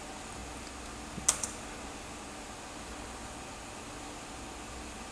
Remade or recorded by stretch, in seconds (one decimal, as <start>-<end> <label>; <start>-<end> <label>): 0.0-5.1 recorded